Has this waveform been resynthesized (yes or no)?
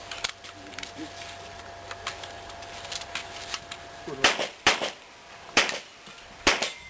yes